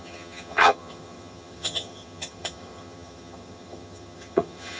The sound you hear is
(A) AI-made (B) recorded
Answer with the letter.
A